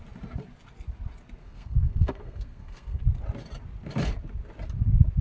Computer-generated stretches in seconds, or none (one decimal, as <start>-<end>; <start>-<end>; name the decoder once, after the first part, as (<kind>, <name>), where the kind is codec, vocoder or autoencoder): 1.4-3.0 (codec, SNAC)

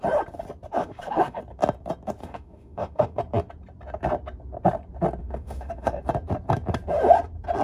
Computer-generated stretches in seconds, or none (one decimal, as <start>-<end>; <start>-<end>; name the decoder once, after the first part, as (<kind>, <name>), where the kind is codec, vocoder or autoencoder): 0.8-1.4 (autoencoder, DAC-VAE); 2.2-3.2; 5.2-6.0

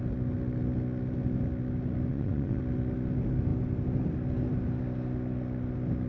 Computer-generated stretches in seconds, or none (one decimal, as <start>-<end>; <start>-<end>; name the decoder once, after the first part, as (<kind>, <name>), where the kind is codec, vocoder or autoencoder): 2.1-2.6 (vocoder, Vocos)

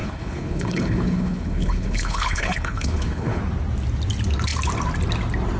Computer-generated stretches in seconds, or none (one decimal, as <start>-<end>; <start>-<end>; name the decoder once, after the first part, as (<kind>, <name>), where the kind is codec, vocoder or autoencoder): 0.0-3.4 (codec, HILCodec)

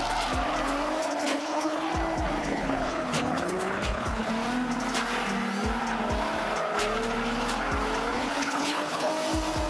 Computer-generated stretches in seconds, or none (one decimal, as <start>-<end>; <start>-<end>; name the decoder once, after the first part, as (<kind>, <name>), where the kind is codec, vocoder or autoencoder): 1.2-1.9 (codec, HILCodec); 2.4-4.3; 8.1-9.1

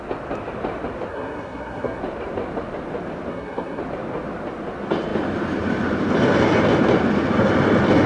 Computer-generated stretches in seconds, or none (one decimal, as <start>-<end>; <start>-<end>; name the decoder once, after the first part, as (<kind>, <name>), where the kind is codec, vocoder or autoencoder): 1.1-2.0 (codec, SNAC); 3.3-3.8